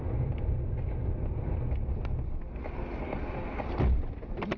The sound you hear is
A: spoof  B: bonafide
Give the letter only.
B